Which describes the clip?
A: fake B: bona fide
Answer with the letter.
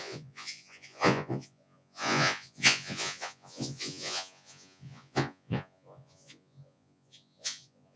A